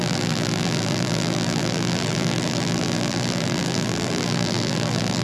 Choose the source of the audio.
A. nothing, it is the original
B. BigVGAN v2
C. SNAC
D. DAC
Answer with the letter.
B